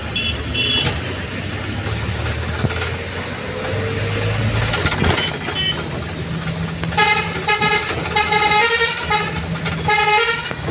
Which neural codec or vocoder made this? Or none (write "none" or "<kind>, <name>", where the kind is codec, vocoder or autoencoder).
none